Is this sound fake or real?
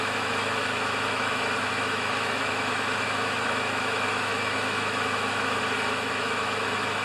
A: fake